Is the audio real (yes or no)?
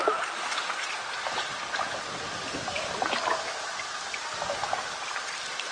yes